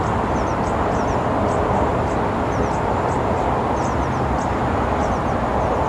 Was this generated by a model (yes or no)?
no